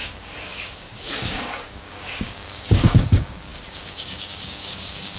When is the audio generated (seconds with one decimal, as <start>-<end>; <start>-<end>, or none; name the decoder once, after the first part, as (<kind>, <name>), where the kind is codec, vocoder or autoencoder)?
0.0-5.2 (codec, DAC)